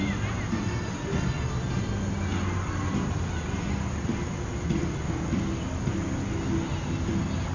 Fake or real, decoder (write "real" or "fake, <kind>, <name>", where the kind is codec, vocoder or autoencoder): real